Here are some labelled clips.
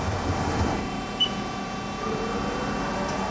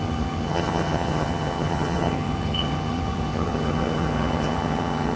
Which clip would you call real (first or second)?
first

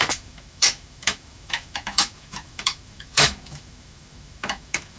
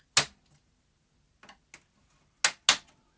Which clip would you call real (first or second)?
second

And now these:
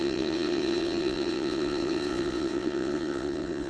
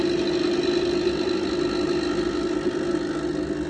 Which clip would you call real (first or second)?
second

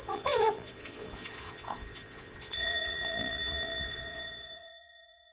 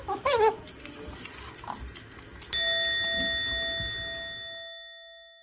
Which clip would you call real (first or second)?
second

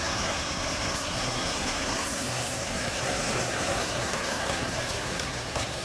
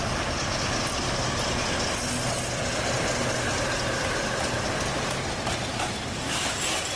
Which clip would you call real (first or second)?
second